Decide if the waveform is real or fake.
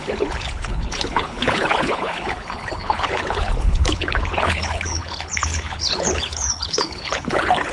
fake